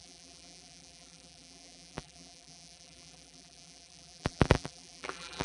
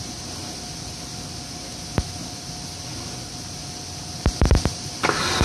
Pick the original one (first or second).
second